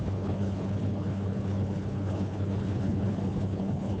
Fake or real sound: fake